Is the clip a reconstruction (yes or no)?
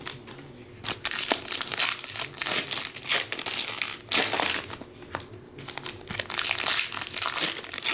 no